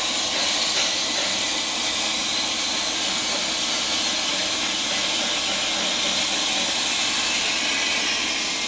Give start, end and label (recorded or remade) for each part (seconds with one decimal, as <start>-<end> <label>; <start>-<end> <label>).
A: 0.0-8.7 recorded